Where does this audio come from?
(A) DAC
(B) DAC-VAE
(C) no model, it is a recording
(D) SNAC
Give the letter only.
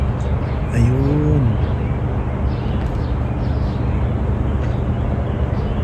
C